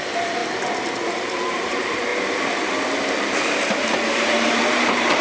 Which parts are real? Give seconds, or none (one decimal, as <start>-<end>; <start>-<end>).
0.4-1.0; 2.1-3.1